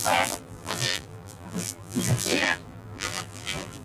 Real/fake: fake